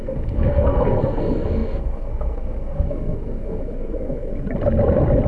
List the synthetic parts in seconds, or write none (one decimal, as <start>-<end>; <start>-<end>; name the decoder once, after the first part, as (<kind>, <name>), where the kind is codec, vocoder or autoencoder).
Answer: 0.0-4.3 (codec, SNAC)